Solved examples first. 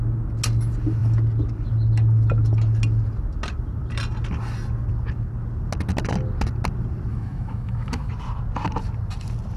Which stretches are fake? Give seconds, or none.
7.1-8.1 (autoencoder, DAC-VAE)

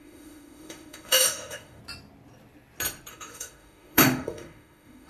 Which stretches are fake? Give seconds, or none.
0.0-1.8 (autoencoder, DAC-VAE); 3.1-5.1

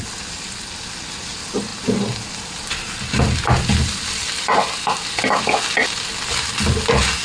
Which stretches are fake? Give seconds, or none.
none

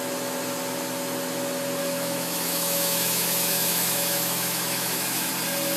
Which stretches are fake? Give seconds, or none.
1.8-5.3 (autoencoder, DAC-VAE)

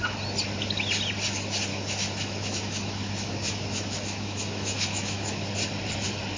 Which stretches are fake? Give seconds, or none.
1.7-5.5 (autoencoder, DAC-VAE)

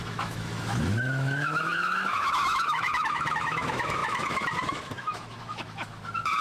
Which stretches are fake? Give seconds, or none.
0.0-6.4 (autoencoder, DAC-VAE)